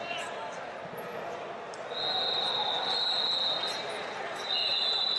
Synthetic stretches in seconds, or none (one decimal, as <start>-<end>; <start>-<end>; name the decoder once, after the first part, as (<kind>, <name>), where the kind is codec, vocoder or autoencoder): none